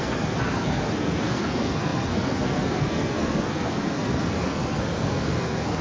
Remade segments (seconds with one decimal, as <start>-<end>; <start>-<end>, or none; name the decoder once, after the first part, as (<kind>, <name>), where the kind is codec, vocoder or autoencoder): 0.0-5.8 (codec, SNAC)

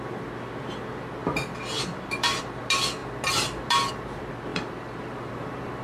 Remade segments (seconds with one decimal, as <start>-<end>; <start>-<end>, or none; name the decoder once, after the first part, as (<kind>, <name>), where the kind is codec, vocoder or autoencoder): 1.2-2.4 (vocoder, BigVGAN v2); 4.5-5.3

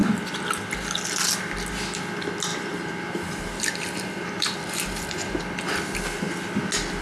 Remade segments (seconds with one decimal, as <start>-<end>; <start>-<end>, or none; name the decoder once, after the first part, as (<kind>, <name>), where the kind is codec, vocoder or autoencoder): 2.5-5.4 (vocoder, BigVGAN v2)